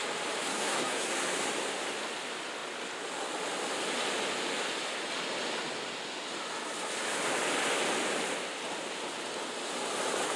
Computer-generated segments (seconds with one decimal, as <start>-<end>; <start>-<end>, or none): 0.5-1.1